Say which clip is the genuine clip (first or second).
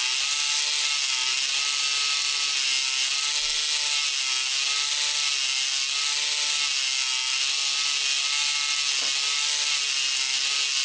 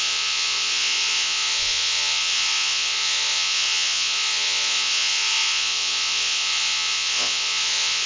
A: first